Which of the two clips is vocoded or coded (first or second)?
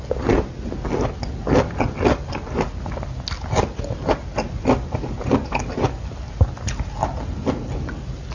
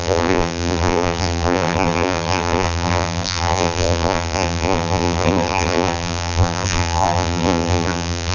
second